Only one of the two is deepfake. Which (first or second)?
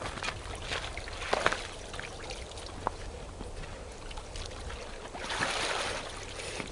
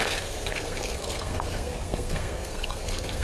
second